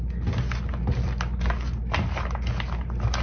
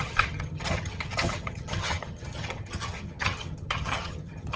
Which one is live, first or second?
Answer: first